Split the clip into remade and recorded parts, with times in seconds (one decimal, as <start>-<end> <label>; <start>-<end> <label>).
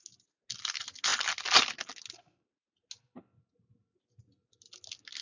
0.0-5.2 recorded